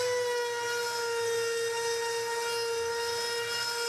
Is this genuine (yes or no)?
yes